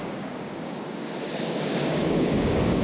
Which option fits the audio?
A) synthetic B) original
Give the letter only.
A